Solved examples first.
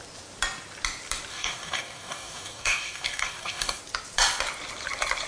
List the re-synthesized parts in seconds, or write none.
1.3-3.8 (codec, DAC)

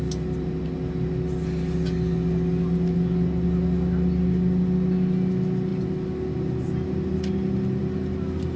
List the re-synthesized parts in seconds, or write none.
none

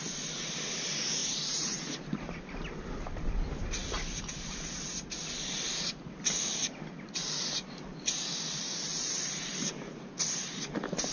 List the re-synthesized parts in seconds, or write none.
1.2-2.2 (vocoder, BigVGAN v2); 8.9-10.1

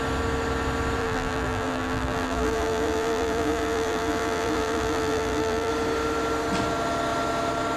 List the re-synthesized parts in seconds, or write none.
1.0-5.7 (vocoder, BigVGAN v2)